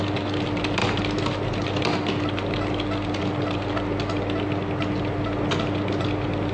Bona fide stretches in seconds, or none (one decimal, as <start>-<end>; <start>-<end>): 0.0-6.5